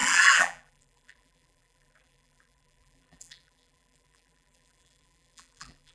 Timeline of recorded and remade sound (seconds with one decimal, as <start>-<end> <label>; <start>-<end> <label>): 0.0-5.9 remade